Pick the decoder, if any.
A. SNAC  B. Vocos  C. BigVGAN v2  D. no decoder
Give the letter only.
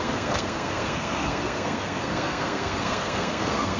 A